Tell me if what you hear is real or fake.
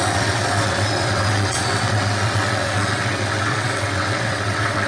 fake